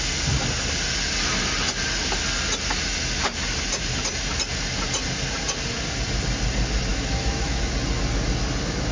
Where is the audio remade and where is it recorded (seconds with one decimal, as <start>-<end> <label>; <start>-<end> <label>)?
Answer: 0.0-6.9 recorded; 6.9-7.7 remade; 7.7-8.9 recorded